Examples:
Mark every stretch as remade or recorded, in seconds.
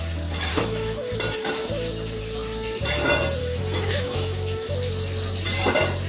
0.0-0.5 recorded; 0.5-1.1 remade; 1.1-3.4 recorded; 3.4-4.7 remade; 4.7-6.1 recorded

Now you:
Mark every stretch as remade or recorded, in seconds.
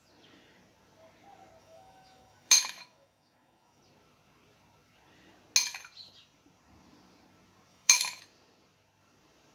0.0-1.6 recorded; 1.6-3.8 remade; 3.8-7.7 recorded; 7.7-8.2 remade; 8.2-9.5 recorded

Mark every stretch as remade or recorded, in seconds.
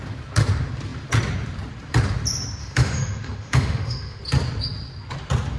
0.0-2.6 recorded; 2.6-4.2 remade; 4.2-5.6 recorded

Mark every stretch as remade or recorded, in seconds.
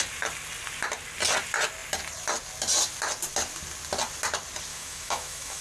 0.0-4.7 recorded; 4.7-5.6 remade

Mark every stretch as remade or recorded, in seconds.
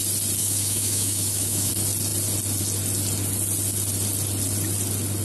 0.0-0.4 recorded; 0.4-1.7 remade; 1.7-5.2 recorded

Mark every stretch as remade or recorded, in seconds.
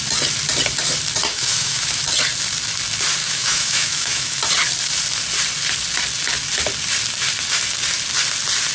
0.0-1.3 recorded; 1.3-2.0 remade; 2.0-3.2 recorded; 3.2-4.4 remade; 4.4-8.7 recorded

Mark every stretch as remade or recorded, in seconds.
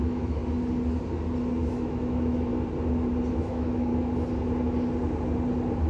0.0-0.4 remade; 0.4-1.7 recorded; 1.7-2.5 remade; 2.5-3.3 recorded; 3.3-3.9 remade; 3.9-5.9 recorded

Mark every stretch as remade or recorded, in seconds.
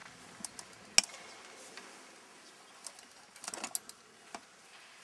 0.0-5.0 recorded